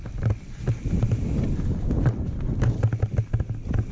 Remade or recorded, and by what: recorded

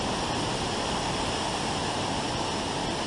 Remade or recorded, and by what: recorded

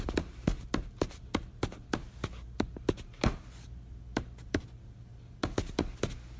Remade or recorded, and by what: recorded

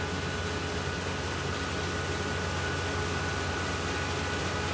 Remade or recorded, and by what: recorded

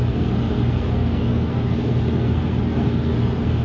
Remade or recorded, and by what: remade, codec, SNAC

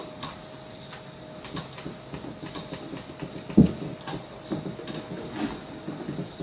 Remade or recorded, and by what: recorded